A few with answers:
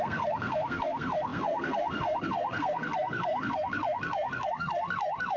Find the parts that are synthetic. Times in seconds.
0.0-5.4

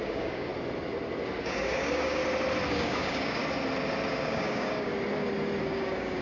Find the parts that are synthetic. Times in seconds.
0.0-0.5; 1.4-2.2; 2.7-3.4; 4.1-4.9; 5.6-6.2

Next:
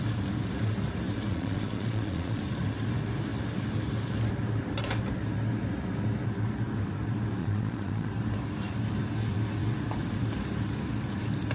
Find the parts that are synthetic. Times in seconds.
1.3-2.4; 7.4-8.1

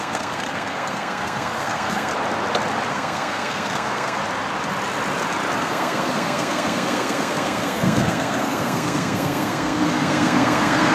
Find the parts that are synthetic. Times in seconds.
0.0-2.1; 2.9-4.2; 5.6-10.9